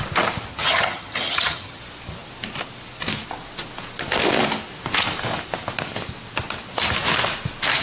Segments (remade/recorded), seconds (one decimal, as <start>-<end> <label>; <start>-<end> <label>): 0.0-0.5 recorded; 0.5-1.8 remade; 1.8-7.8 recorded